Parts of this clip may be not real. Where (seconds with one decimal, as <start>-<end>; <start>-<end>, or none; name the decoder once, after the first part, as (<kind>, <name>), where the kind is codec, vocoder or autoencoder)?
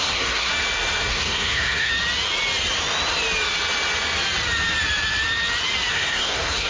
0.0-0.5 (codec, SNAC); 1.1-1.9; 5.9-6.7